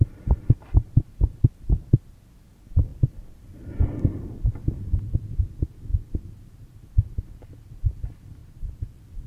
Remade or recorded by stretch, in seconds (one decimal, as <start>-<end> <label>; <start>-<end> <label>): 0.0-2.9 recorded; 2.9-5.0 remade; 5.0-5.9 recorded; 5.9-7.7 remade; 7.7-8.4 recorded; 8.4-9.3 remade